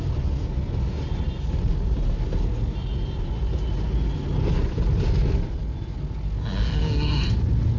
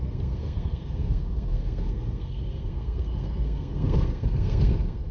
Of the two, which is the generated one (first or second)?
second